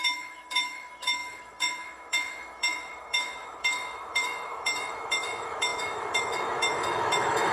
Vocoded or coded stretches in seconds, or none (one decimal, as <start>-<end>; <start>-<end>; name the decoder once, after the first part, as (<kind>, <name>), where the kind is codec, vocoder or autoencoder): 0.0-7.5 (autoencoder, DAC-VAE)